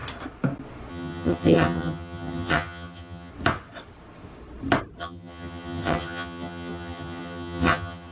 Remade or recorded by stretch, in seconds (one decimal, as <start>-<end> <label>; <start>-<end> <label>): 0.0-0.9 recorded; 0.9-3.3 remade; 3.3-5.0 recorded; 5.0-8.1 remade